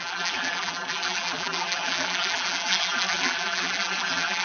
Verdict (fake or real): fake